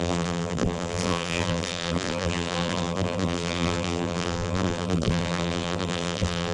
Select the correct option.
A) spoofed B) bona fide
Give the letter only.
A